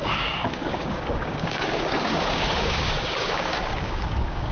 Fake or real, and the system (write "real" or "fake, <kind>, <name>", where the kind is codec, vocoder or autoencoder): fake, codec, DAC